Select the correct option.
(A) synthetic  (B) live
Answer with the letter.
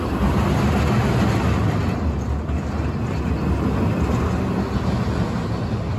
B